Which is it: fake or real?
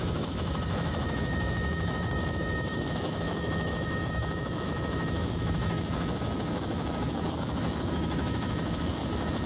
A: fake